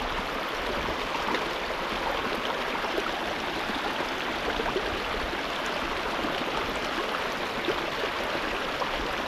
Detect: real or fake real